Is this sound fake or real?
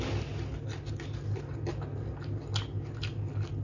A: real